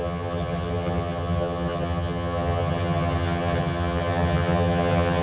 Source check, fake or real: fake